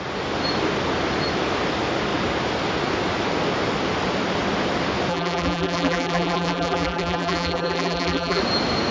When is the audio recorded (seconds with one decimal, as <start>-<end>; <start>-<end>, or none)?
0.0-5.1; 8.4-8.9